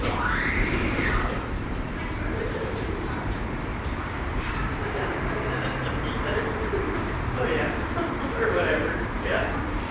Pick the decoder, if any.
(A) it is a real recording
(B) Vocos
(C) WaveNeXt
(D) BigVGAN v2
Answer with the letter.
D